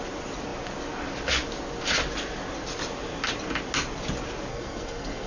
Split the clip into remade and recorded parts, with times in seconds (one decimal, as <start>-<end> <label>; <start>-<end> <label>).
0.0-4.5 recorded; 4.5-5.3 remade